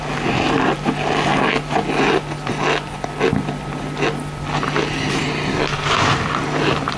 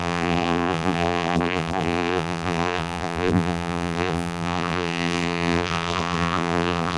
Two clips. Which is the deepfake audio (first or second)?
second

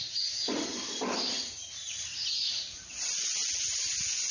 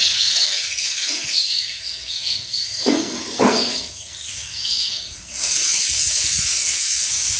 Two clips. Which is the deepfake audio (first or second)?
second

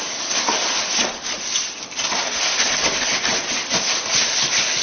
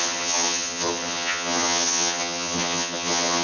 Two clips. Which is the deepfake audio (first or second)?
second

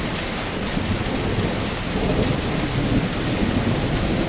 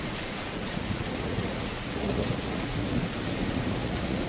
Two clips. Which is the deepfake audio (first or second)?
second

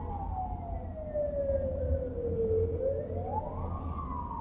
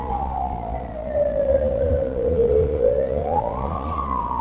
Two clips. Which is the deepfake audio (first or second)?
second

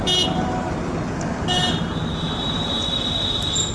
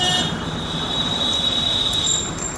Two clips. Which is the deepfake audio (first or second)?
second